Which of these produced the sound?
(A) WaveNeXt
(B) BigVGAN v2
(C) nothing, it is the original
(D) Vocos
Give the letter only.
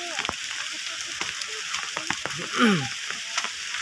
C